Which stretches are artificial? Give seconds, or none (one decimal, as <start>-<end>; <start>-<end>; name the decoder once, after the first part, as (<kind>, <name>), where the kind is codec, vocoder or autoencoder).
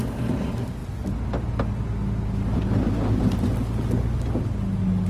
none